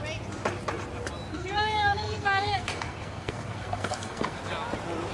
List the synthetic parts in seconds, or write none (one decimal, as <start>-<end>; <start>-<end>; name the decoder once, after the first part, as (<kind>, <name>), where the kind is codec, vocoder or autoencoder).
1.3-4.4 (codec, SNAC)